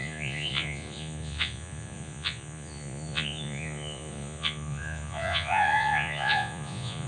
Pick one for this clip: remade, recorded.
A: remade